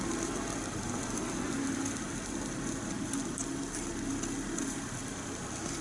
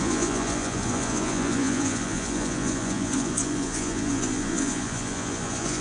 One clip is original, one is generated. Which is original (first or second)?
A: first